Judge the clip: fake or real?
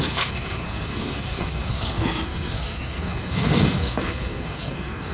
fake